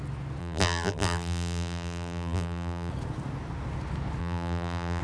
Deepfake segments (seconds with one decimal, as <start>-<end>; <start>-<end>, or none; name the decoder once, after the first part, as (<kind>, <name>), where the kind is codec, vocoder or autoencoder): 0.4-2.9 (vocoder, BigVGAN v2); 4.2-5.0